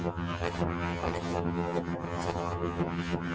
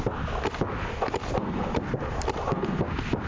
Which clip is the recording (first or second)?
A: second